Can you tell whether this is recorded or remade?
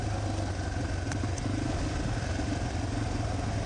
recorded